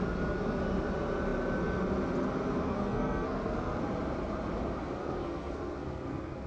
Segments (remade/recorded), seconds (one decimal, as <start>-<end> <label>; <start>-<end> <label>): 0.0-2.6 recorded; 2.6-3.8 remade; 3.8-5.0 recorded; 5.0-6.5 remade